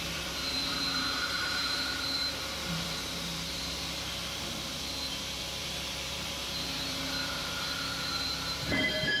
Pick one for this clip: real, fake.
fake